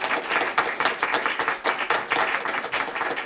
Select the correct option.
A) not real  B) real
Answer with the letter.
B